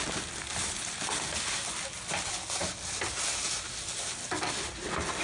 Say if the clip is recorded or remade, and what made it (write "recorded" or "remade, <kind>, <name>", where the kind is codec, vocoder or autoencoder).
recorded